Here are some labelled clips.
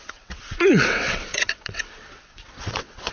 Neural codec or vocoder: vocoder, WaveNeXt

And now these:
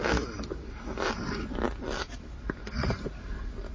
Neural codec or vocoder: none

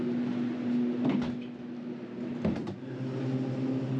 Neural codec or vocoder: none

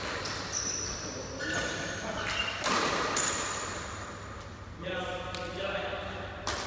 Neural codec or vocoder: none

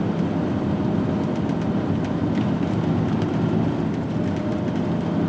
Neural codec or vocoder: none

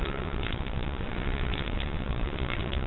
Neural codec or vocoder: vocoder, WaveNeXt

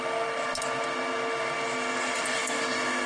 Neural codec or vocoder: none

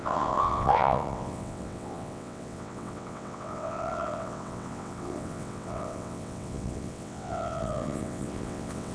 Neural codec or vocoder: vocoder, WaveNeXt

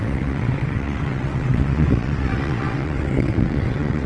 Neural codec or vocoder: vocoder, WaveNeXt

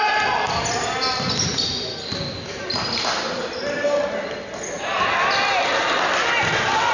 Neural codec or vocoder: none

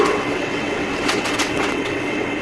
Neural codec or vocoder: vocoder, WaveNeXt